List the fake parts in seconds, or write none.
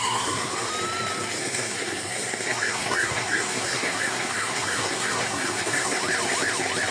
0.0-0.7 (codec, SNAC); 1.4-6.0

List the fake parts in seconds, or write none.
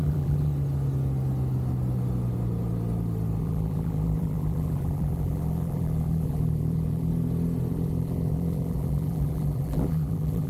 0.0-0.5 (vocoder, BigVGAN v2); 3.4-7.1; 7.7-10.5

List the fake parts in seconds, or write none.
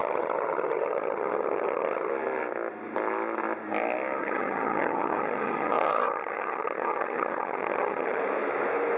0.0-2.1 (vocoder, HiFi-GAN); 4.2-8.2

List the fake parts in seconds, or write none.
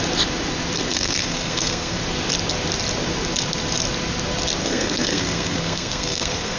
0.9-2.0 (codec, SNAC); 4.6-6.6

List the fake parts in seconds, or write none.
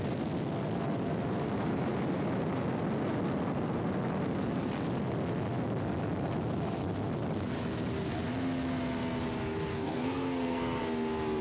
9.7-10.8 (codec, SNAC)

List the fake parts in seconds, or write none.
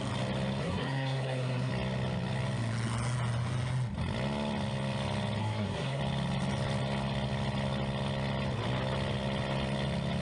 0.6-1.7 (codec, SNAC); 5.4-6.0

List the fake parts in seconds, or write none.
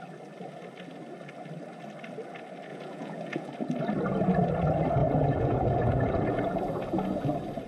2.7-3.5 (vocoder, Vocos); 5.0-6.6